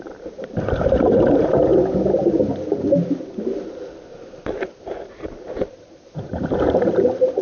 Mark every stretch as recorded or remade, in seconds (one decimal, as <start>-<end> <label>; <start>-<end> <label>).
0.0-1.7 remade; 1.7-4.4 recorded; 4.4-7.4 remade